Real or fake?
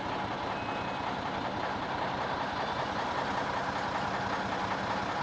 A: real